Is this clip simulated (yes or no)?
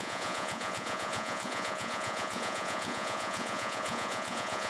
yes